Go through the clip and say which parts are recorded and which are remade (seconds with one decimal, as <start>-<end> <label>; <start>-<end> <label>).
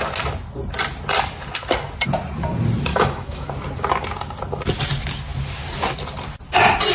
0.0-2.9 recorded; 2.9-3.5 remade; 3.5-6.9 recorded